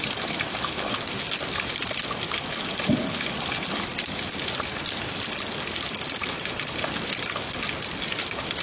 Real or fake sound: real